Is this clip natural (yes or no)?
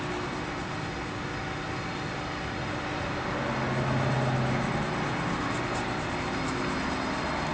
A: yes